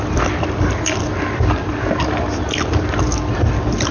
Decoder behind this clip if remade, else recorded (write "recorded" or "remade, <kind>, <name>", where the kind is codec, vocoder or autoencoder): recorded